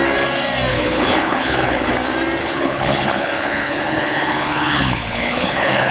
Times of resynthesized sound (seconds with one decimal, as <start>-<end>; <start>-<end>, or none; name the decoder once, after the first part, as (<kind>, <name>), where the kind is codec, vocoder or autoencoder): 0.7-1.9 (codec, HILCodec); 2.4-5.9